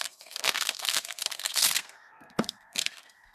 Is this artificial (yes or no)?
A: yes